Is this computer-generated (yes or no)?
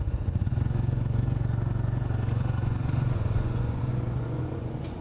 yes